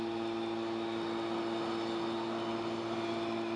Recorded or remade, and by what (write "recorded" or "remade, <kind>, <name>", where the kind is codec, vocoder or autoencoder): recorded